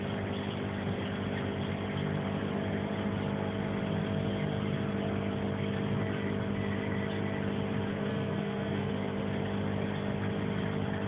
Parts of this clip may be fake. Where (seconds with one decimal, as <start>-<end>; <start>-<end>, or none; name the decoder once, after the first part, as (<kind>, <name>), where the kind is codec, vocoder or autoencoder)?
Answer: 7.9-8.9 (codec, SNAC)